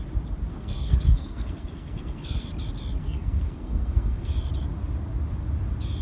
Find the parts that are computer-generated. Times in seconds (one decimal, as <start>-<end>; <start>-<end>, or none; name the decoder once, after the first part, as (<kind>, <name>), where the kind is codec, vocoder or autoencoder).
0.5-2.5 (codec, SNAC); 3.0-4.3